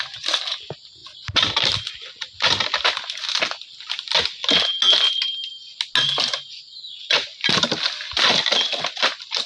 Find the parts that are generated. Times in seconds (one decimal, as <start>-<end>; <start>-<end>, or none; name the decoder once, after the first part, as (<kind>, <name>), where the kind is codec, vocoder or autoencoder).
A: none